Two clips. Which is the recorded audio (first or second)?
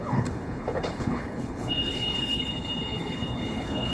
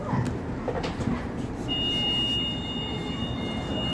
second